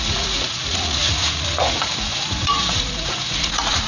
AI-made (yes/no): yes